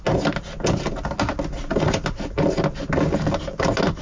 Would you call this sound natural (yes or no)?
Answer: yes